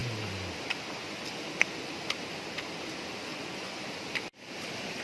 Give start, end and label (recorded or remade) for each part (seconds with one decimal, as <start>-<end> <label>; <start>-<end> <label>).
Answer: 0.0-3.3 recorded; 3.3-3.8 remade; 3.8-5.0 recorded